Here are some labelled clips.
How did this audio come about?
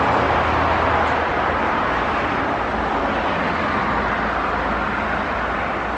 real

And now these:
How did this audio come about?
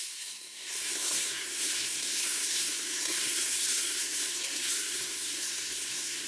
fake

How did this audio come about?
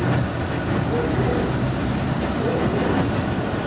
real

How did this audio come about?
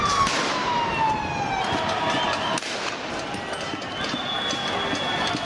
real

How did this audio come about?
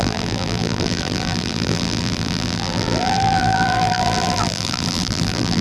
fake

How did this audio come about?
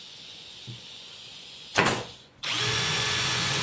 fake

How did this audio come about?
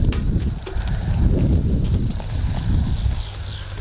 real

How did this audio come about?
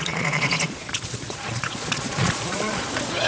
fake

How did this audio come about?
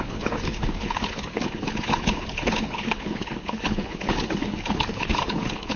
fake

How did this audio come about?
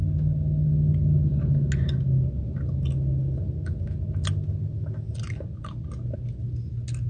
real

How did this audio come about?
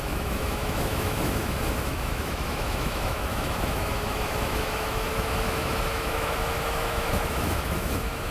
fake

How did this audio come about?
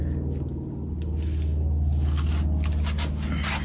real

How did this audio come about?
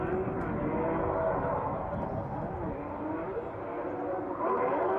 real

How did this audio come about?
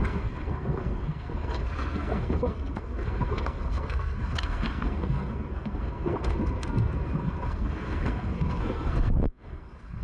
fake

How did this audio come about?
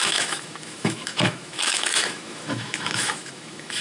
fake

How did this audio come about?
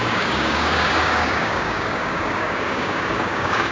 fake